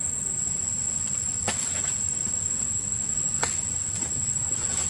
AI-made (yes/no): no